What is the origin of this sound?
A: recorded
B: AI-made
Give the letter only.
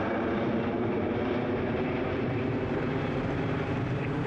B